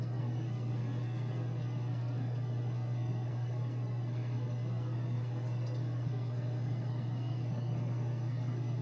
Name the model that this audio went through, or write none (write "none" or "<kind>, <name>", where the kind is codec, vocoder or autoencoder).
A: codec, SNAC